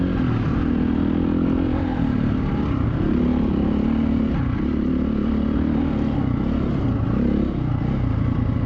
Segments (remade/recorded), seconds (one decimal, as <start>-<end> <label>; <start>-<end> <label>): 0.0-8.7 recorded

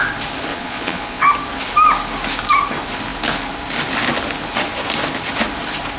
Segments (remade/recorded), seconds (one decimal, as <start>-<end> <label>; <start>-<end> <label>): 0.0-0.5 recorded; 0.5-1.3 remade; 1.3-6.0 recorded

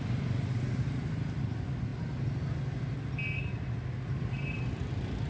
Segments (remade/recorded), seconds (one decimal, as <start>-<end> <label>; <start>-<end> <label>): 0.0-5.3 recorded

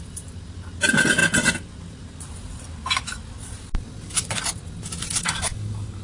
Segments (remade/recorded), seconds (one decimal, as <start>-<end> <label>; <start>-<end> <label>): 0.0-5.2 recorded; 5.2-6.0 remade

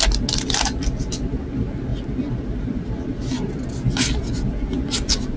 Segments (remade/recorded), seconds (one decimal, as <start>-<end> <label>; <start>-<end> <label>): 0.0-5.4 recorded

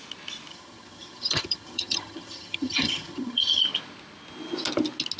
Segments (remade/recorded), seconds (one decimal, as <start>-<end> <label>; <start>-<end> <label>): 0.0-0.5 recorded; 0.5-3.6 remade; 3.6-5.2 recorded

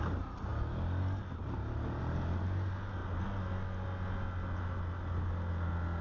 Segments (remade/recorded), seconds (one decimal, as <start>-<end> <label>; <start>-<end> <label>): 0.0-6.0 recorded